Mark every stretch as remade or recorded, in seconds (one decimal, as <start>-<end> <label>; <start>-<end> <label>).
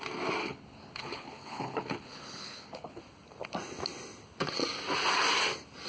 0.0-0.4 recorded; 0.4-3.0 remade; 3.0-5.9 recorded